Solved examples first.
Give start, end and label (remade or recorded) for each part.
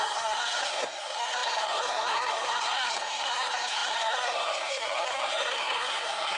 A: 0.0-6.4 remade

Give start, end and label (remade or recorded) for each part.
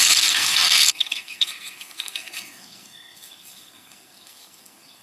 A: 0.0-5.0 remade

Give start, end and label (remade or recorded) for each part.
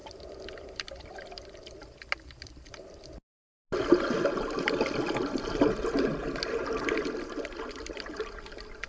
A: 0.0-8.9 recorded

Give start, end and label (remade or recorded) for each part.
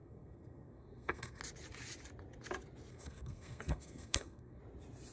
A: 0.0-1.4 remade; 1.4-2.9 recorded; 2.9-4.6 remade; 4.6-5.1 recorded